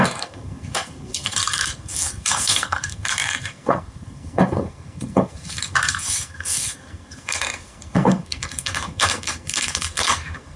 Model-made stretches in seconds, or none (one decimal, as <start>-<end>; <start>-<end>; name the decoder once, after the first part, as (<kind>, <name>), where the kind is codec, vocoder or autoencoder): 0.0-10.6 (codec, SNAC)